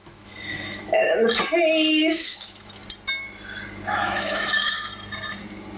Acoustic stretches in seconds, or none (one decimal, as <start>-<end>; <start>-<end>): 1.2-1.9; 2.8-3.9; 4.9-5.8